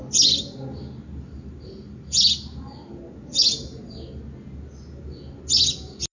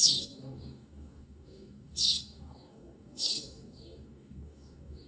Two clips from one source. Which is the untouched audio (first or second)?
first